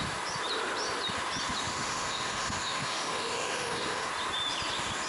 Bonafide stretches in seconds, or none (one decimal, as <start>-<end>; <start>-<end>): 0.0-1.7; 4.1-5.1

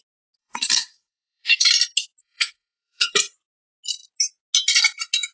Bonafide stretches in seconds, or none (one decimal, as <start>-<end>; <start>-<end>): 0.0-0.4; 1.7-2.2; 3.1-5.3